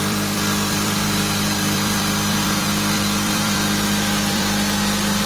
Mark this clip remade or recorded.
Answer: remade